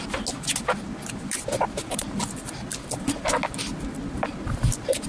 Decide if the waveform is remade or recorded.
recorded